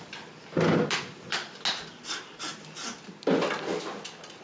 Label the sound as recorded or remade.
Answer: recorded